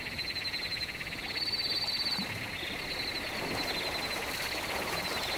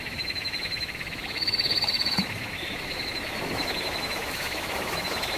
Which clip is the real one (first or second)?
first